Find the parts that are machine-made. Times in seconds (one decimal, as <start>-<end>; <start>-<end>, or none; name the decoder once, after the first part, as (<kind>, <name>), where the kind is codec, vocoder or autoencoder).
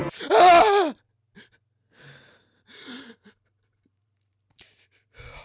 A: 2.0-5.4 (vocoder, BigVGAN v2)